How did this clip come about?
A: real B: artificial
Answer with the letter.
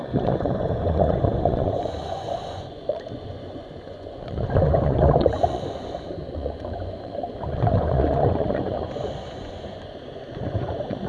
B